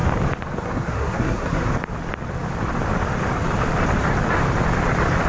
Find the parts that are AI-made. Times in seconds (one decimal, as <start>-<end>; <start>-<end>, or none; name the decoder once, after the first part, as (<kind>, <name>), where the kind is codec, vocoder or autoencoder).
0.5-1.7 (codec, SNAC)